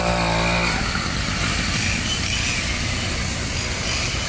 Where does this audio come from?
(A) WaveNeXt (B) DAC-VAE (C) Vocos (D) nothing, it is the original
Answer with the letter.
D